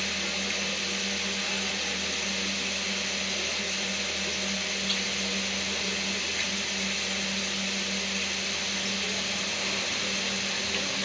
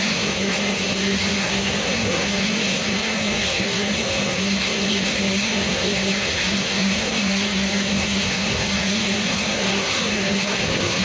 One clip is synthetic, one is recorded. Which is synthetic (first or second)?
second